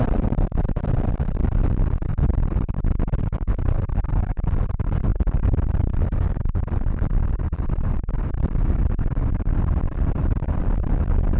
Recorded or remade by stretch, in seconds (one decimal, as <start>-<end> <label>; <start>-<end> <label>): 0.0-1.4 remade; 1.4-3.6 recorded; 3.6-5.1 remade; 5.1-5.9 recorded; 5.9-8.4 remade; 8.4-10.6 recorded; 10.6-11.4 remade